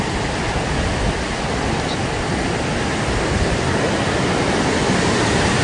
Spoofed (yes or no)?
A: no